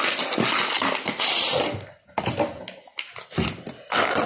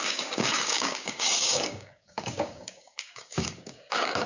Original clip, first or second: first